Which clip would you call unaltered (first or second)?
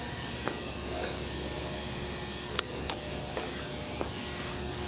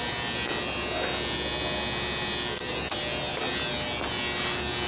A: second